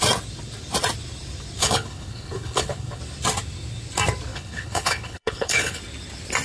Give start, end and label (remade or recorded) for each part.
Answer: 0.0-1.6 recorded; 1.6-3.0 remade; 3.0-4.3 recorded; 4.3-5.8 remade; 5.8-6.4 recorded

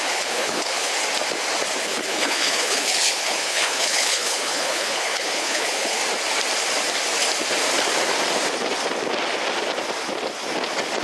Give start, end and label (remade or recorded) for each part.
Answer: 0.0-0.9 remade; 0.9-1.8 recorded; 1.8-6.0 remade; 6.0-11.0 recorded

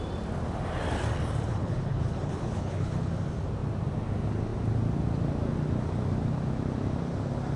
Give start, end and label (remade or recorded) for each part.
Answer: 0.0-1.5 recorded; 1.5-3.1 remade; 3.1-7.6 recorded

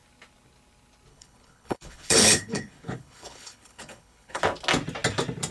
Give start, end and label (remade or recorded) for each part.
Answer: 0.0-1.1 recorded; 1.1-4.4 remade; 4.4-5.5 recorded